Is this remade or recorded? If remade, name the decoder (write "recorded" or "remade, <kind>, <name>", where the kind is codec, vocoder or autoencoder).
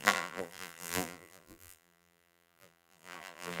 remade, vocoder, BigVGAN v2